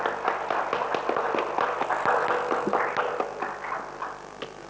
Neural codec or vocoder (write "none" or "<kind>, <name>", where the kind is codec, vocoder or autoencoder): none